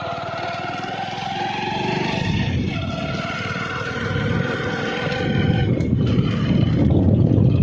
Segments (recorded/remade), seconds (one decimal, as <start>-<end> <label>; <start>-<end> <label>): 0.0-7.6 recorded